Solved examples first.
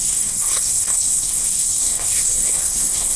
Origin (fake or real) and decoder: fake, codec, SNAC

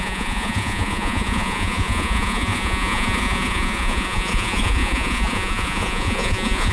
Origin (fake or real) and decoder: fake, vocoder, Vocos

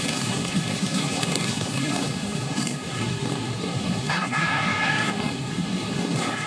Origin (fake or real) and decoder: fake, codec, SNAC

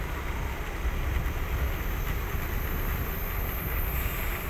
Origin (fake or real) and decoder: real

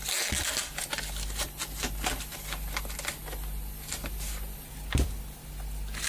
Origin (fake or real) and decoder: real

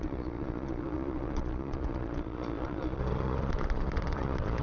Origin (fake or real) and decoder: fake, vocoder, Vocos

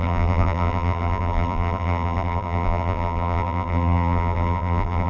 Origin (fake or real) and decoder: fake, vocoder, BigVGAN v2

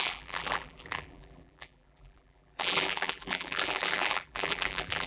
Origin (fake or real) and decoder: fake, vocoder, BigVGAN v2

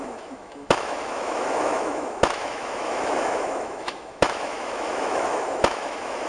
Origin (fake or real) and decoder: fake, autoencoder, DAC-VAE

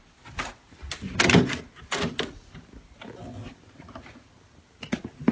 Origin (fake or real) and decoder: real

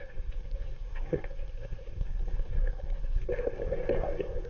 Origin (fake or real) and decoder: fake, codec, SNAC